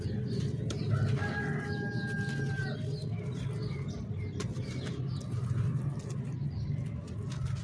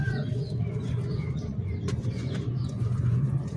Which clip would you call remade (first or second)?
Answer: second